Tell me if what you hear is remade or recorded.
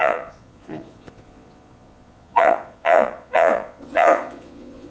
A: remade